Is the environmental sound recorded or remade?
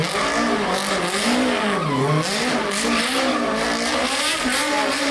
recorded